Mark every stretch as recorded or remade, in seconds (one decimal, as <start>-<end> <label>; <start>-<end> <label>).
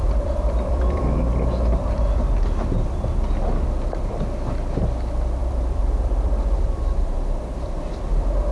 0.0-1.0 remade; 1.0-5.4 recorded; 5.4-8.5 remade